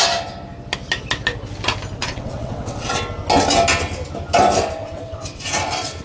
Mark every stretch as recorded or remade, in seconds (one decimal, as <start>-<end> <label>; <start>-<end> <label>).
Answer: 0.0-2.0 recorded; 2.0-3.0 remade; 3.0-4.8 recorded; 4.8-5.4 remade; 5.4-6.0 recorded

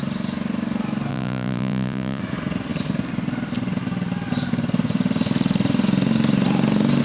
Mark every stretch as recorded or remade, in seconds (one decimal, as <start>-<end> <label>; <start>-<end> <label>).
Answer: 0.0-1.1 recorded; 1.1-2.2 remade; 2.2-7.0 recorded

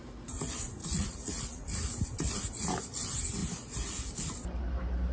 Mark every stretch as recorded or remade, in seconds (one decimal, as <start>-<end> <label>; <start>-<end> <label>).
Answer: 0.0-0.8 recorded; 0.8-1.7 remade; 1.7-5.1 recorded

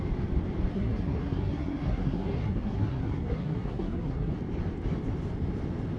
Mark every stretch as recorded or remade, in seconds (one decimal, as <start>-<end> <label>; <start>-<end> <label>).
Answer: 0.0-0.7 recorded; 0.7-4.3 remade; 4.3-6.0 recorded

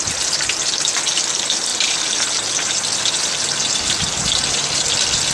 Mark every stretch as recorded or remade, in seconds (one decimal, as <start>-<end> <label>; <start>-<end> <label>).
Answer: 0.0-5.3 recorded

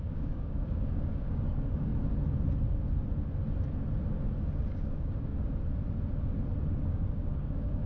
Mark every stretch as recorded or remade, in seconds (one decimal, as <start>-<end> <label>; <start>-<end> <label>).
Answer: 0.0-1.9 remade; 1.9-4.7 recorded; 4.7-5.3 remade; 5.3-6.9 recorded; 6.9-7.9 remade

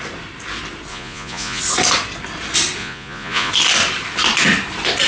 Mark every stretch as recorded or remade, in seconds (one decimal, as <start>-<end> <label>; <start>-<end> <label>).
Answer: 0.0-0.9 recorded; 0.9-1.6 remade; 1.6-2.8 recorded; 2.8-3.5 remade; 3.5-5.1 recorded

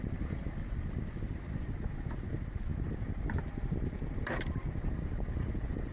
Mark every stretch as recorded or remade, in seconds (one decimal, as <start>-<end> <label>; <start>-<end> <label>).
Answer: 0.0-5.9 recorded